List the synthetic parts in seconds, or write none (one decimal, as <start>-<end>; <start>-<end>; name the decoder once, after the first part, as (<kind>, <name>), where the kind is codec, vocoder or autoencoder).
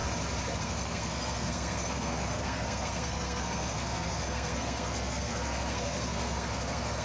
0.6-7.0 (codec, SNAC)